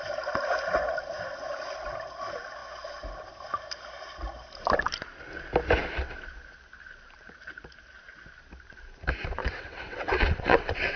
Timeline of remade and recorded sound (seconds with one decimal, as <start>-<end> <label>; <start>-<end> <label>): 0.0-9.4 recorded; 9.4-11.0 remade